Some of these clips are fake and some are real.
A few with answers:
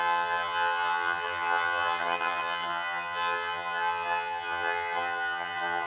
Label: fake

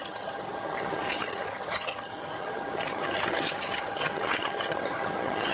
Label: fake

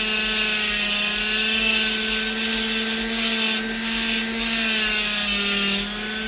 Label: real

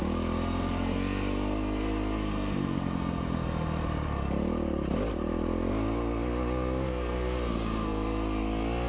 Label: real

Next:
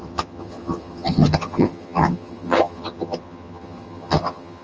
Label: fake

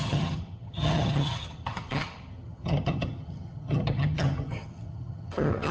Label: fake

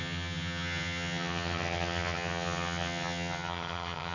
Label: fake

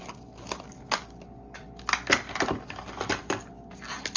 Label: real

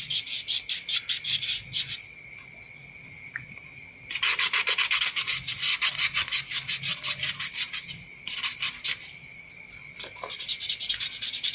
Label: real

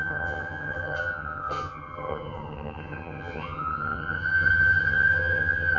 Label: fake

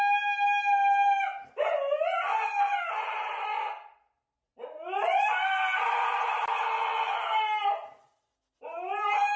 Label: real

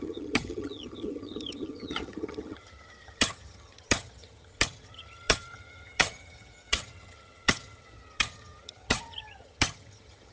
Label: fake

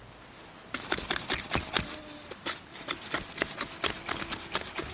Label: real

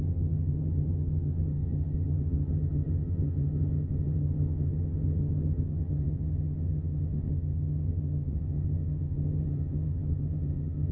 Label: fake